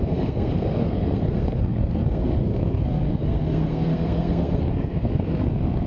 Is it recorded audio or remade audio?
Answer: remade